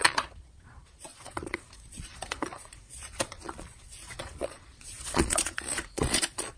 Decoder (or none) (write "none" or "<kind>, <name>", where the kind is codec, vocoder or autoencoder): vocoder, Vocos